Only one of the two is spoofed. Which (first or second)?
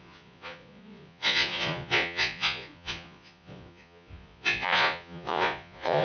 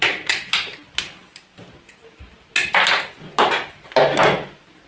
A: first